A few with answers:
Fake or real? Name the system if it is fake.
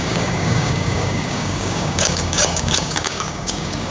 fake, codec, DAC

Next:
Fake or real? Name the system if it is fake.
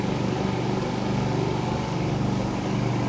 fake, codec, DAC